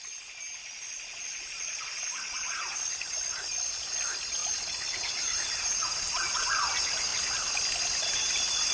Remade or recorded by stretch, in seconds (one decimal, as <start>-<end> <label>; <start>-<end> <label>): 0.0-0.6 recorded; 0.6-3.0 remade; 3.0-4.4 recorded; 4.4-6.5 remade; 6.5-8.7 recorded